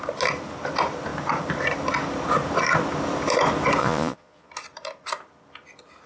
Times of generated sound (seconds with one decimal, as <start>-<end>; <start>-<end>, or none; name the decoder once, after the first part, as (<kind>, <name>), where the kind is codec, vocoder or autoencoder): 3.8-4.5 (vocoder, Vocos)